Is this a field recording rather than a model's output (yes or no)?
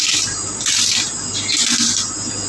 yes